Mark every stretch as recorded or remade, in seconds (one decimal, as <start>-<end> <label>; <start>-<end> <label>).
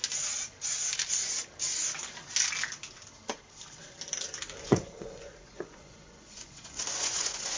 0.0-4.6 recorded; 4.6-7.6 remade